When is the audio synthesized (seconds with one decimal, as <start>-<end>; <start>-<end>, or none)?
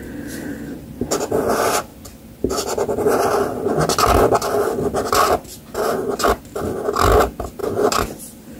none